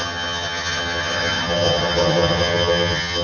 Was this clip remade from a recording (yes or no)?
yes